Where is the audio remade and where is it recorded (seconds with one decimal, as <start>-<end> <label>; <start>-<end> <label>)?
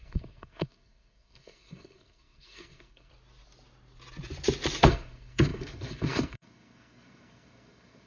0.0-3.1 remade; 3.1-4.8 recorded; 4.8-8.1 remade